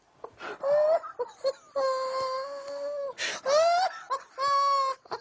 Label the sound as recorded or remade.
recorded